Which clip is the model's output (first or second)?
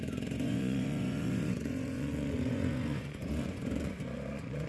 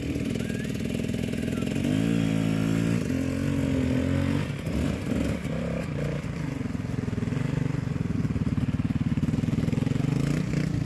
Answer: first